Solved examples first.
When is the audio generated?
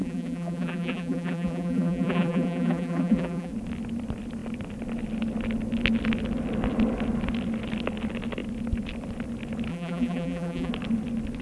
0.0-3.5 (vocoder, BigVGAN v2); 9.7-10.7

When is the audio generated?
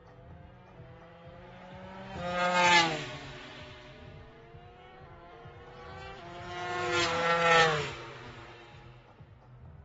none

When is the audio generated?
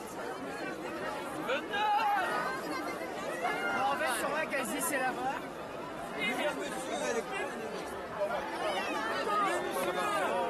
none